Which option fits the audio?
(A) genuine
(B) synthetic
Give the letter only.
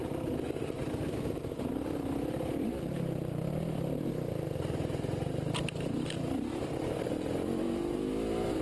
A